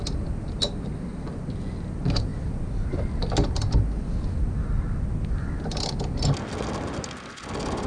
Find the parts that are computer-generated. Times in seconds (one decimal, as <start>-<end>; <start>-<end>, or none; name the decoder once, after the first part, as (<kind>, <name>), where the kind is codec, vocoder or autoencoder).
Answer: none